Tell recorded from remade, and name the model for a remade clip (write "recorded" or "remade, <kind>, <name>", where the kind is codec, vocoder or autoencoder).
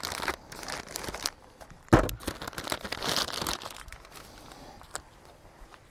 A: recorded